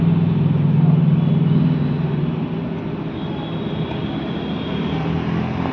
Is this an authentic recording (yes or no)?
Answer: yes